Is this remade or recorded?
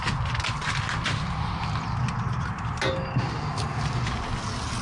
recorded